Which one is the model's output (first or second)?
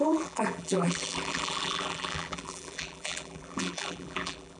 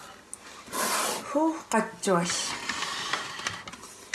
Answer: first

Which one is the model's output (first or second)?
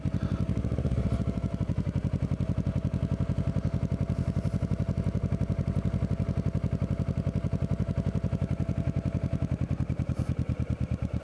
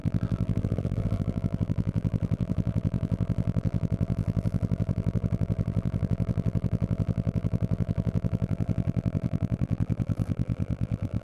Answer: second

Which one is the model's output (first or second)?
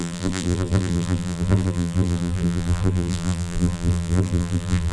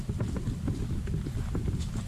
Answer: first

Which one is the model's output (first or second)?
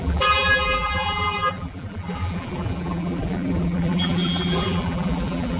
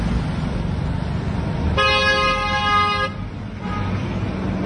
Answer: first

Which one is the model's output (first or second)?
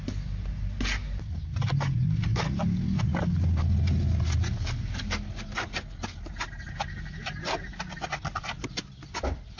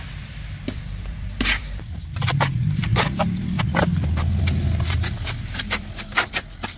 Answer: second